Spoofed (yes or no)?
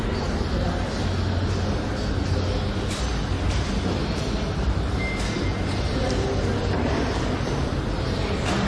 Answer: no